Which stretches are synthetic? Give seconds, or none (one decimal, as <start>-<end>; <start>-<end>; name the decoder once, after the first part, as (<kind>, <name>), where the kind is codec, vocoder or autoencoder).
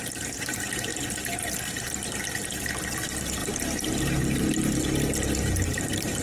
0.0-0.9 (vocoder, BigVGAN v2); 3.0-6.2